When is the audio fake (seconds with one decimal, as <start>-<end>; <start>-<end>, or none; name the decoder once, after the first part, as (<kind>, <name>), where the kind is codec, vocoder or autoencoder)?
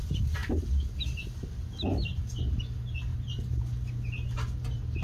3.1-3.6 (vocoder, BigVGAN v2)